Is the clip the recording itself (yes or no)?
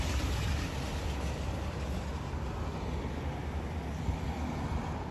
yes